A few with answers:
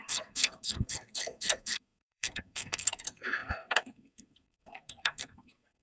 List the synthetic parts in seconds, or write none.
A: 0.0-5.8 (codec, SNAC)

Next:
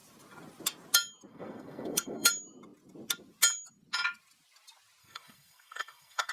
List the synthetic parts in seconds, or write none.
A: 1.3-2.3 (codec, SNAC); 5.0-6.3

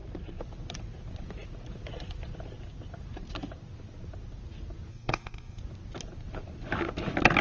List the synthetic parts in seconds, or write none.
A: 4.9-5.6 (codec, SNAC)

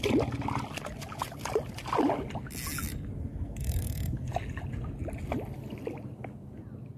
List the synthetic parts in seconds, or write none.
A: 3.3-4.3 (codec, SNAC)

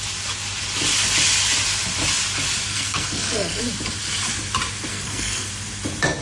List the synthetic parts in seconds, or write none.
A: 2.7-3.6 (codec, SNAC); 4.9-5.5

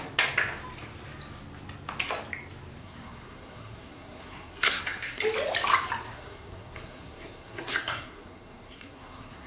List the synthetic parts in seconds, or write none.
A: 2.8-5.2 (codec, SNAC); 6.1-9.5

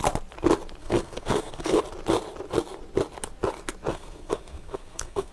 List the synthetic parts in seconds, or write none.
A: 0.8-1.8 (codec, SNAC); 3.9-5.3

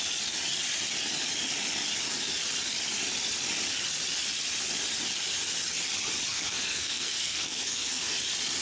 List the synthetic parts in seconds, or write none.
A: 6.3-8.2 (codec, SNAC)